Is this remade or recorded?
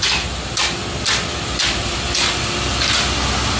recorded